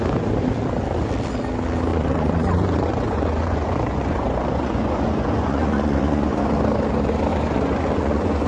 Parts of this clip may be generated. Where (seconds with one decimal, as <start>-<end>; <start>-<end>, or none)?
1.9-6.4; 7.3-8.5